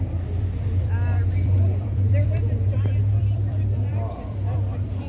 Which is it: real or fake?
fake